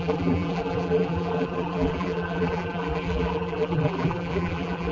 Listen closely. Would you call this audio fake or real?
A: fake